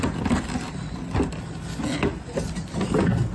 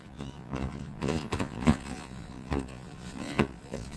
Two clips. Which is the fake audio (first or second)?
second